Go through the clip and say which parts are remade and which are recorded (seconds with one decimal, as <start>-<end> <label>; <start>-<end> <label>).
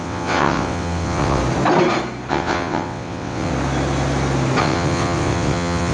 0.0-1.4 remade; 1.4-2.3 recorded; 2.3-3.5 remade; 3.5-4.6 recorded; 4.6-5.9 remade